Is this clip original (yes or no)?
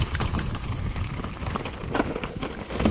yes